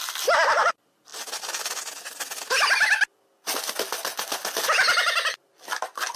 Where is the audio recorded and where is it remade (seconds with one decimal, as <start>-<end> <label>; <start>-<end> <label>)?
0.0-6.2 recorded

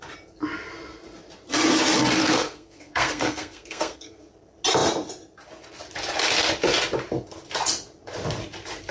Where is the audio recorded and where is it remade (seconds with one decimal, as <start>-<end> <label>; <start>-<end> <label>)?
0.0-2.2 recorded; 2.2-4.3 remade; 4.3-8.9 recorded

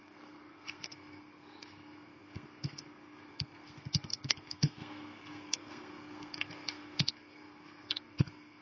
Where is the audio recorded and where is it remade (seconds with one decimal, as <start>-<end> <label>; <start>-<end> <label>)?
0.0-8.6 remade

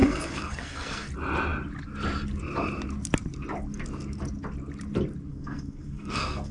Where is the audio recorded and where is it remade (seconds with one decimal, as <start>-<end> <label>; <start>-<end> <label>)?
0.0-1.1 remade; 1.1-5.3 recorded; 5.3-6.5 remade

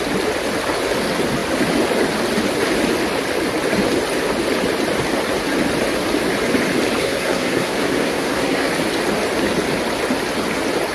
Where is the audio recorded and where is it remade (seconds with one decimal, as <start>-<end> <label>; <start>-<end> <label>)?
0.0-7.0 recorded; 7.0-8.7 remade; 8.7-10.9 recorded

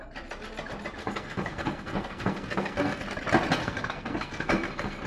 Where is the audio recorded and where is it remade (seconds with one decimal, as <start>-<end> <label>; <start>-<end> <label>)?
0.0-1.0 recorded; 1.0-3.0 remade; 3.0-3.6 recorded; 3.6-5.1 remade